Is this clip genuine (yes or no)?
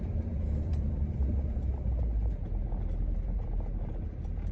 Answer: no